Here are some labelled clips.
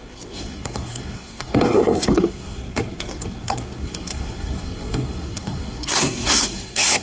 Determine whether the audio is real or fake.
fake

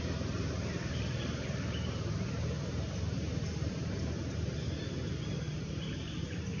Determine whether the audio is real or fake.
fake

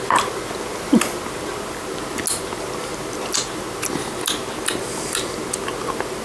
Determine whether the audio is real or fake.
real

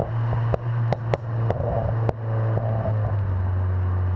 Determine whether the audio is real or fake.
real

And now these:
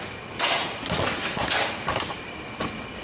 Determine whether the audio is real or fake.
real